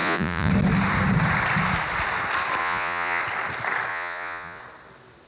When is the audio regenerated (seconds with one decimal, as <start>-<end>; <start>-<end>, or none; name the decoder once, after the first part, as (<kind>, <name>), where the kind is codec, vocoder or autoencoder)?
0.0-0.5 (vocoder, Vocos); 2.6-3.2; 3.9-4.6